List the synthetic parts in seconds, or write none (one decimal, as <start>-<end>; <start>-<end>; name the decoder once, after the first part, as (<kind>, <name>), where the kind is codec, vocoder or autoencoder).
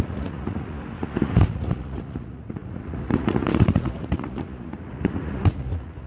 0.0-6.1 (vocoder, Vocos)